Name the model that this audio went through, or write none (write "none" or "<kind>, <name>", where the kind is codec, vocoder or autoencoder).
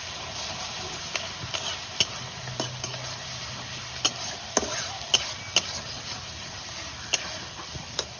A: none